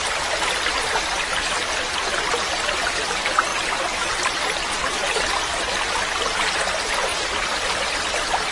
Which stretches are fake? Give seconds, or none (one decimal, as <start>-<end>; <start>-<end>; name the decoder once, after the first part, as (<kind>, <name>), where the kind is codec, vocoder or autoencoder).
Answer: 7.1-7.7 (vocoder, BigVGAN v2)